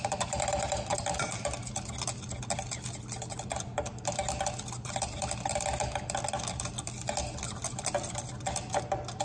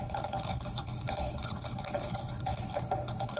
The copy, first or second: second